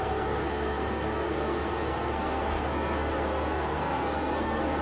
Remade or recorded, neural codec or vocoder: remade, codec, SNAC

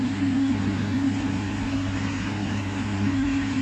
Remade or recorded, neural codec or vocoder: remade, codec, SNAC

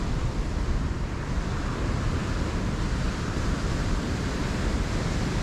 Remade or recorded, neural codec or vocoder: recorded